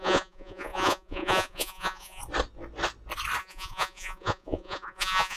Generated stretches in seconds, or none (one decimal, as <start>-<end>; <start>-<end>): 0.0-2.2; 3.4-5.4